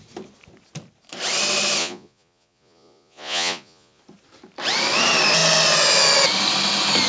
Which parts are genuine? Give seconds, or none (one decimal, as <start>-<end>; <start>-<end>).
0.0-1.8; 4.0-7.1